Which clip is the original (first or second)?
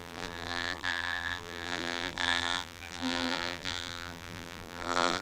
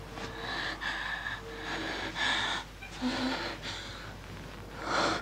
second